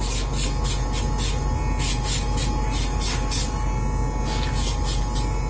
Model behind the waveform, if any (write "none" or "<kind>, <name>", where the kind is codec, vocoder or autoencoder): none